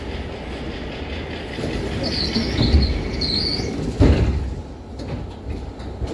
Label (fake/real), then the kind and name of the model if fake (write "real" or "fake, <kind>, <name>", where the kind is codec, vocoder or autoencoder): real